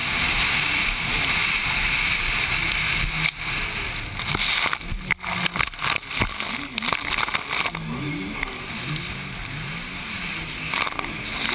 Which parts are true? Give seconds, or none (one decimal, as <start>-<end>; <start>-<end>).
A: 0.0-11.5